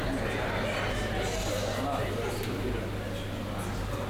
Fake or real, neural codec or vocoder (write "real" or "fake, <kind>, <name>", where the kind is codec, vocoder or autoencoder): real